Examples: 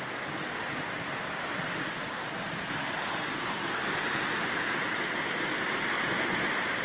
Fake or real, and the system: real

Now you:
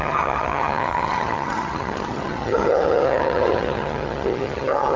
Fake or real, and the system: fake, vocoder, HiFi-GAN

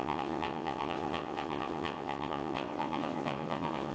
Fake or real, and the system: fake, vocoder, WaveNeXt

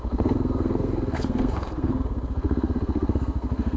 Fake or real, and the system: fake, codec, SNAC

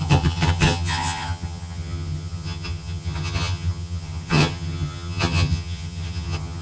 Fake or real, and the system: fake, vocoder, HiFi-GAN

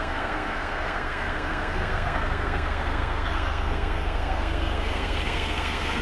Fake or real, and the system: fake, codec, SNAC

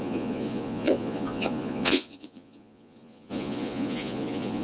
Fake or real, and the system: fake, vocoder, Vocos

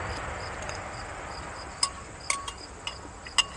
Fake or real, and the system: real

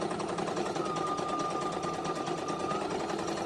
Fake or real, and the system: real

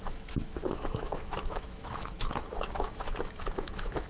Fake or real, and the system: fake, autoencoder, DAC-VAE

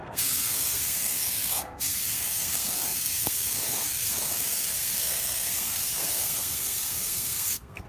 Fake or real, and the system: fake, codec, SNAC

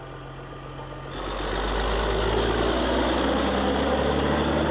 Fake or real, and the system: real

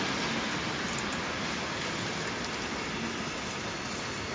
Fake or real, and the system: real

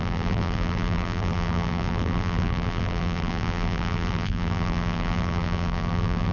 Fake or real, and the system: fake, vocoder, BigVGAN v2